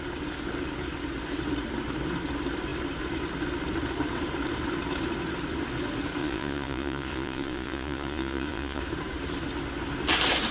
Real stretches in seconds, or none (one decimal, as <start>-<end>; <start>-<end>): 0.0-6.2; 8.8-10.5